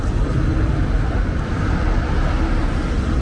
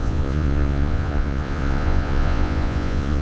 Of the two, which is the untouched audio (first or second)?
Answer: first